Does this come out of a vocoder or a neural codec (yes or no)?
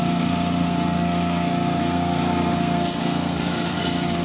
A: yes